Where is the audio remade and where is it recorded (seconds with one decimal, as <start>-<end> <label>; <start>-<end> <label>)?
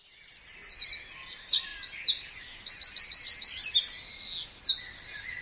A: 0.0-5.4 recorded